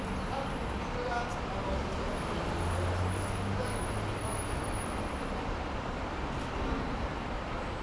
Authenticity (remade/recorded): recorded